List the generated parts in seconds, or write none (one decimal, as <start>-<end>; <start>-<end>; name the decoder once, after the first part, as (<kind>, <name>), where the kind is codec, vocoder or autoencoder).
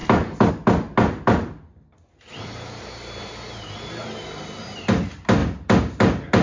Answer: none